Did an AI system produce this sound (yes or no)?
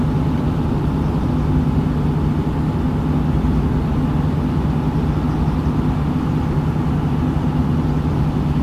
no